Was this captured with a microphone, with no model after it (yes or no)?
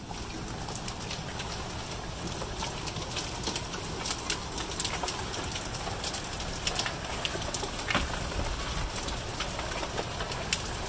yes